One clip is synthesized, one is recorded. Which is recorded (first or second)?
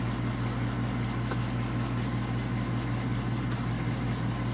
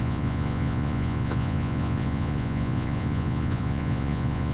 first